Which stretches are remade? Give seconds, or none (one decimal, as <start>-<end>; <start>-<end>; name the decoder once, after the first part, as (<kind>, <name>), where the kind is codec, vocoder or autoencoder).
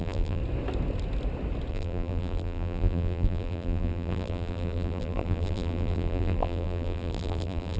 0.0-0.4 (vocoder, BigVGAN v2); 1.7-7.8